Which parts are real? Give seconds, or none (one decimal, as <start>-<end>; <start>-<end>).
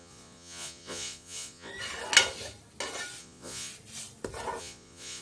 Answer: 1.7-3.2; 3.7-4.6